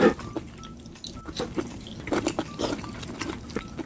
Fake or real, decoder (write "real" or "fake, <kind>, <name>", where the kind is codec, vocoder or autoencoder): real